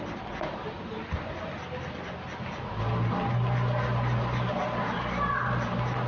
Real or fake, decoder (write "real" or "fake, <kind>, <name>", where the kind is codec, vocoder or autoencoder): real